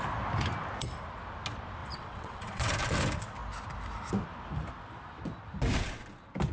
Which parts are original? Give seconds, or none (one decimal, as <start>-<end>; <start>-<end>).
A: 0.0-1.8; 2.7-6.5